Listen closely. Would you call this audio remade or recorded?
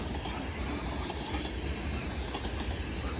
recorded